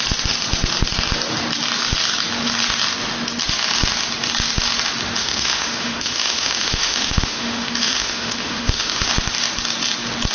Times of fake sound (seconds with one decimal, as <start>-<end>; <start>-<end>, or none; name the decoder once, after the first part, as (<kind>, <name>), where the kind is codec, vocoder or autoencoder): 5.2-9.1 (autoencoder, DAC-VAE)